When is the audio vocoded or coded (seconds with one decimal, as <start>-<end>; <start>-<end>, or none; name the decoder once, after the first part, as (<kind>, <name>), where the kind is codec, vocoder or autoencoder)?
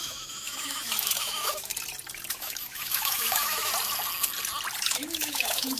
0.0-1.7 (autoencoder, DAC-VAE); 2.3-3.7; 4.8-5.8